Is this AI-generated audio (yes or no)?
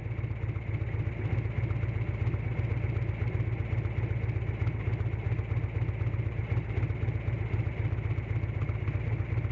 no